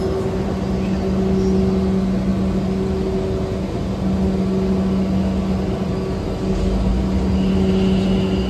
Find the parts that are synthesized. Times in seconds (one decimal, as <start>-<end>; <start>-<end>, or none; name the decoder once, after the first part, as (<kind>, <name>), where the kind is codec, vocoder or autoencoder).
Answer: none